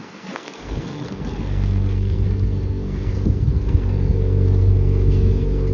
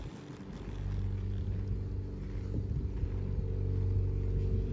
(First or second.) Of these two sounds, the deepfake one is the first